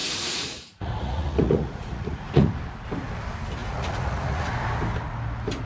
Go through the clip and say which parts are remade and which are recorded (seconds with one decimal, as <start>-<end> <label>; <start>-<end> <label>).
0.0-2.5 remade; 2.5-3.6 recorded; 3.6-4.5 remade; 4.5-5.7 recorded